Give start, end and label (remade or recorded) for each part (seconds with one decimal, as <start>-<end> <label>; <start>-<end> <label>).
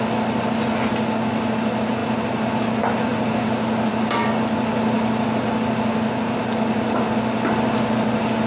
0.0-8.5 recorded